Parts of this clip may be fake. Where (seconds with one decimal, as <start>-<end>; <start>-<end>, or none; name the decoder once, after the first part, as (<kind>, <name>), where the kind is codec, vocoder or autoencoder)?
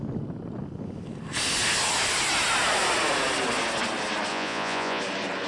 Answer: 4.3-5.0 (vocoder, Vocos)